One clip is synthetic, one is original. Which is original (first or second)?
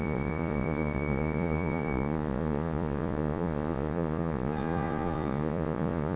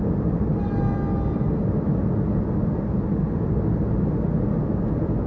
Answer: second